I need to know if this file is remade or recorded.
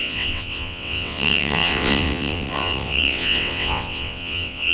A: remade